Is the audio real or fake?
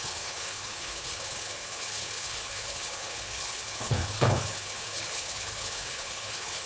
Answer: fake